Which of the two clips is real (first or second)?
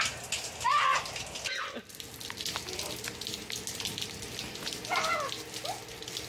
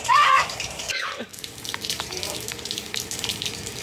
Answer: first